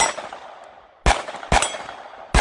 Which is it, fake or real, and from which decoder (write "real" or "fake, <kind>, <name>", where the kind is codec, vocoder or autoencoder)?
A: real